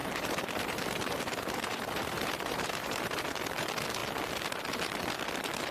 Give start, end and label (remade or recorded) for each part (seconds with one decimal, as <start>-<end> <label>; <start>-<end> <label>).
0.0-3.4 remade; 3.4-5.7 recorded